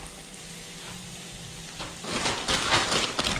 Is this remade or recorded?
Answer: recorded